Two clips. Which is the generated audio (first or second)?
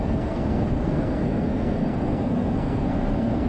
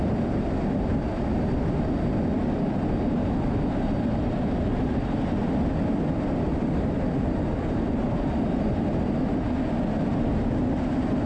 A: first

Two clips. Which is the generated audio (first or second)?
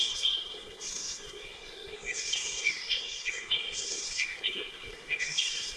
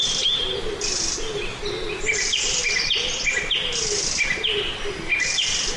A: first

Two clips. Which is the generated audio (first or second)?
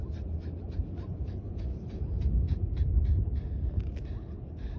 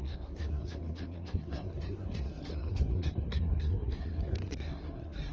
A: second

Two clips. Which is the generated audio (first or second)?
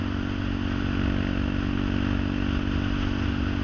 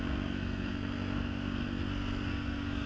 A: second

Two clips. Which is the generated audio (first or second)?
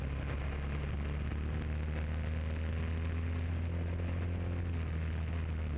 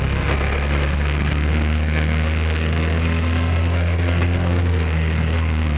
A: second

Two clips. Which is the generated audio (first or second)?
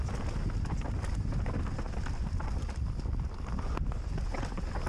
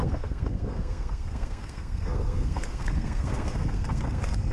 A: second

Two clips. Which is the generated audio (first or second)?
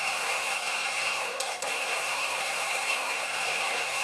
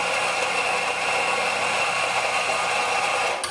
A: first